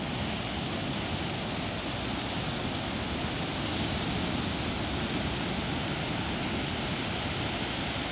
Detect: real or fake real